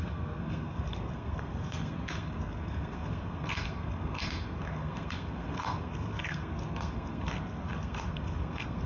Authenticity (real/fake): fake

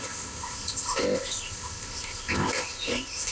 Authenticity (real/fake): fake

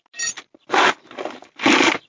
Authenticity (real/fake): real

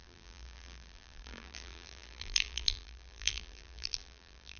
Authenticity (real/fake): fake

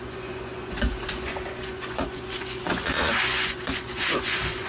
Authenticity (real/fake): fake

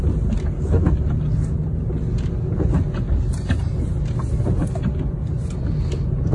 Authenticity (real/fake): real